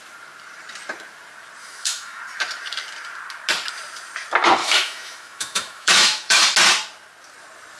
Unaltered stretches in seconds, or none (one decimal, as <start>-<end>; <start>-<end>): 0.0-1.6; 2.2-4.6; 6.4-7.8